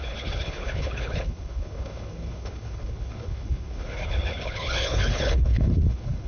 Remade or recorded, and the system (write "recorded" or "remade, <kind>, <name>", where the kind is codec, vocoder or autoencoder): remade, codec, HILCodec